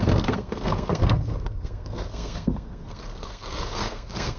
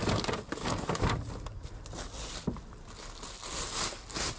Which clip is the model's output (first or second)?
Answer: first